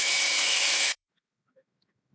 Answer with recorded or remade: remade